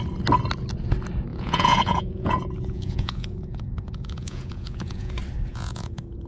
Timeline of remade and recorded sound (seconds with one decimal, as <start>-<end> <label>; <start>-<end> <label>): 0.0-1.3 recorded; 1.3-5.1 remade; 5.1-5.5 recorded; 5.5-6.3 remade